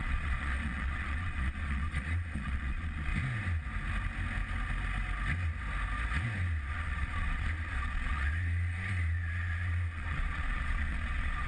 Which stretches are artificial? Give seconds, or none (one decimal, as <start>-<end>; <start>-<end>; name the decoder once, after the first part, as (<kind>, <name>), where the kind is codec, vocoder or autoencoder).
0.0-3.1 (vocoder, Vocos); 6.7-11.5